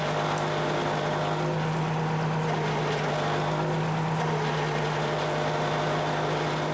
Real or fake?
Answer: real